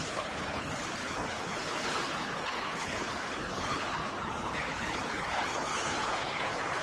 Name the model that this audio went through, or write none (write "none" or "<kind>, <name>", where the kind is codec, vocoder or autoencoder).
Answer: codec, HILCodec